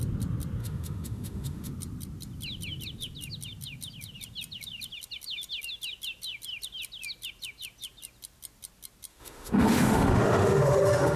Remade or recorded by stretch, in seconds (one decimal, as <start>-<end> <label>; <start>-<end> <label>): 0.0-0.6 recorded; 0.6-1.7 remade; 1.7-9.1 recorded; 9.1-11.2 remade